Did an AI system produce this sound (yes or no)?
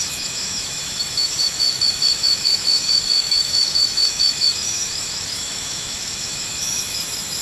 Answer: yes